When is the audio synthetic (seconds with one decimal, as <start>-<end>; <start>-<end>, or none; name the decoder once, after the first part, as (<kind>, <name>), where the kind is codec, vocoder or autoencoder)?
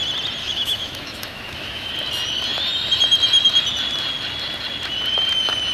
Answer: 0.4-1.9 (autoencoder, DAC-VAE)